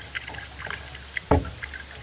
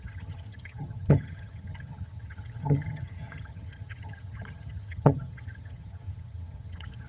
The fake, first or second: second